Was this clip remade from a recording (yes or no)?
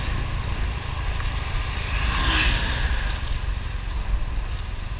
no